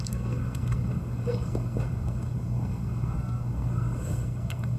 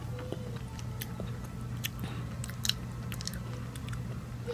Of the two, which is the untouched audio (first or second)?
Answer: second